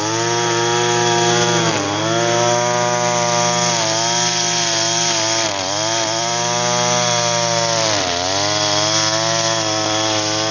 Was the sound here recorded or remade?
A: recorded